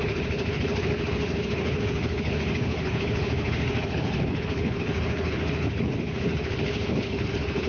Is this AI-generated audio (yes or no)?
yes